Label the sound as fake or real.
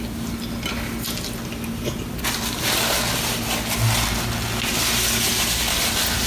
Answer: real